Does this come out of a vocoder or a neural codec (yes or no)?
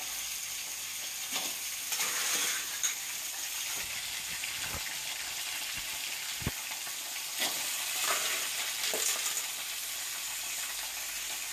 no